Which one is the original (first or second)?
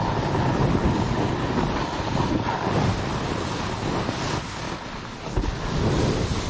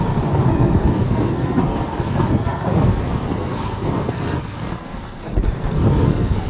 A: first